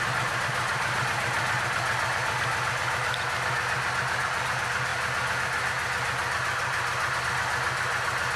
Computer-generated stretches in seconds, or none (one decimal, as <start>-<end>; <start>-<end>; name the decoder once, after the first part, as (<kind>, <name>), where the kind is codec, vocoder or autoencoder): none